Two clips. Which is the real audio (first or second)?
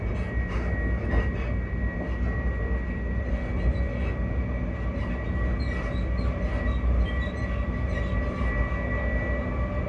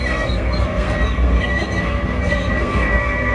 first